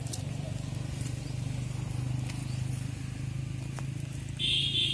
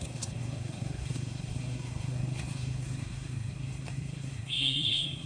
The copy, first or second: second